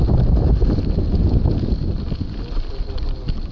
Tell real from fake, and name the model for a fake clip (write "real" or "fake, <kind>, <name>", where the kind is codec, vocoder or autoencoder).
real